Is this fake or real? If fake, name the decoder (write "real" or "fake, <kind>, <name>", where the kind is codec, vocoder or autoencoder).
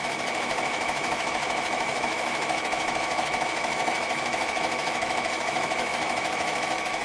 fake, autoencoder, DAC-VAE